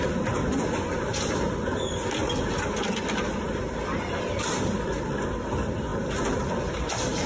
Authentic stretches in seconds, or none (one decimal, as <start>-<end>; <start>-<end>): 0.0-7.3